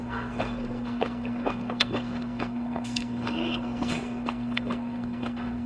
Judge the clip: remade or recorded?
remade